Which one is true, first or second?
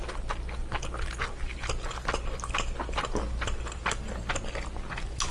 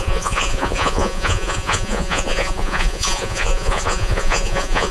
first